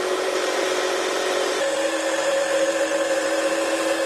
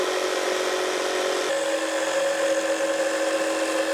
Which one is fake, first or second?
first